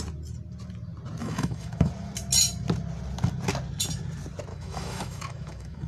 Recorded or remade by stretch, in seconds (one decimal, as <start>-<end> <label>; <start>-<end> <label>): 0.0-1.2 recorded; 1.2-1.9 remade; 1.9-4.5 recorded; 4.5-5.9 remade